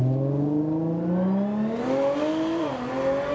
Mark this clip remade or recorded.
recorded